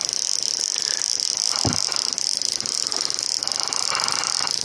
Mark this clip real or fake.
real